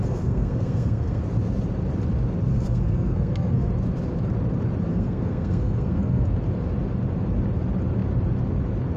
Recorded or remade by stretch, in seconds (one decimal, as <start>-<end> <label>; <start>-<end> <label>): 0.0-1.2 remade; 1.2-2.5 recorded; 2.5-3.7 remade; 3.7-4.9 recorded; 4.9-6.3 remade; 6.3-9.0 recorded